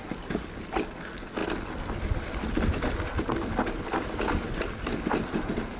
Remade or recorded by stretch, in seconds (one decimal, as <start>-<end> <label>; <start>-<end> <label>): 0.0-5.8 recorded